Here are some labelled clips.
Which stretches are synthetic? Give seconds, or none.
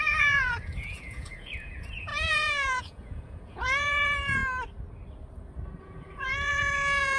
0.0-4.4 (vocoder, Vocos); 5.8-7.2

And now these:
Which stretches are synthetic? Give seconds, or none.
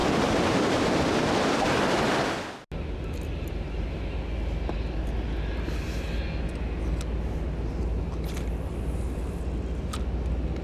none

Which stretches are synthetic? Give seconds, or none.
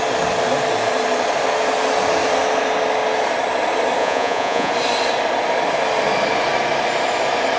4.0-4.7 (vocoder, Vocos)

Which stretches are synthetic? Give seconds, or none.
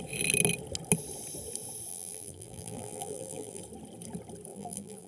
1.9-3.6 (vocoder, BigVGAN v2); 4.5-5.1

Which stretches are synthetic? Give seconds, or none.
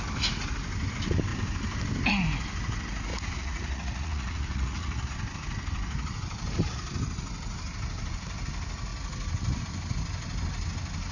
3.1-5.1 (vocoder, Vocos)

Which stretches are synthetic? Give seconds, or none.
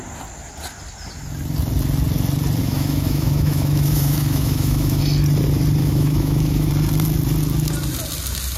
2.6-5.0 (autoencoder, DAC-VAE); 5.8-6.7